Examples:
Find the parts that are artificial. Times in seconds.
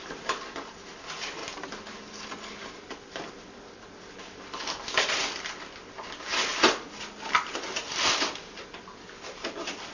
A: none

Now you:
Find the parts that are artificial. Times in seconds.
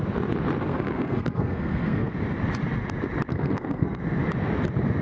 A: 0.7-2.1; 3.3-4.0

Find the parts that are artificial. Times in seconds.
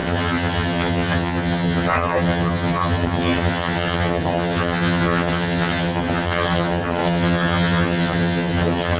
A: 0.0-9.0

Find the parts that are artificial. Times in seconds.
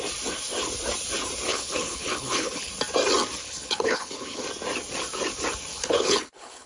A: 1.5-2.7; 3.4-4.4; 5.7-6.7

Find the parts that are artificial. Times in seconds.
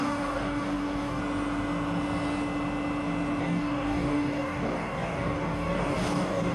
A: 0.0-1.2; 3.4-6.5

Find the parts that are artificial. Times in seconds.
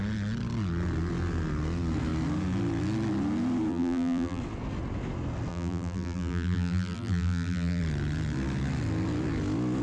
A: 3.7-4.4; 5.5-7.8